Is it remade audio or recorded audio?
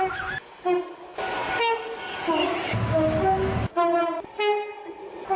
recorded